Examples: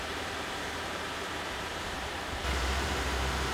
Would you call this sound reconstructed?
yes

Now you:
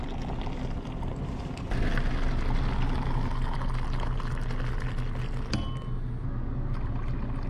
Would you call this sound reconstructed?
no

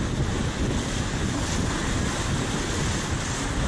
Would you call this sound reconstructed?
no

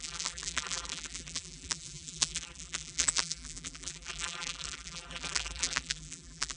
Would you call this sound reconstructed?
yes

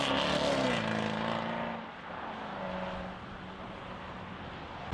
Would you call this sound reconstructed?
no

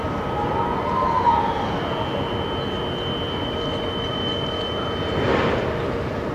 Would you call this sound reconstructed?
no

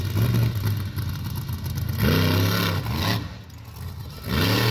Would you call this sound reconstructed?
no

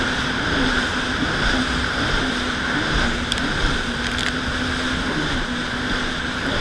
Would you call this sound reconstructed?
no